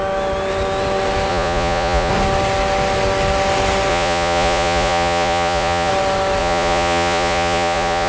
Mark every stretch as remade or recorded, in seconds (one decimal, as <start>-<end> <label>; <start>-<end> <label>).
0.0-1.3 recorded; 1.3-2.1 remade; 2.1-3.9 recorded; 3.9-5.9 remade; 5.9-6.4 recorded; 6.4-8.1 remade